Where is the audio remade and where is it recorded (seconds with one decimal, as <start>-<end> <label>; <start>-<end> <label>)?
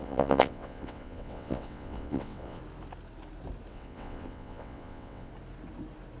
0.0-2.6 remade; 2.6-3.7 recorded; 3.7-5.3 remade; 5.3-6.2 recorded